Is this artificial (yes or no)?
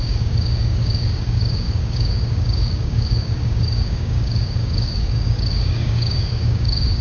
yes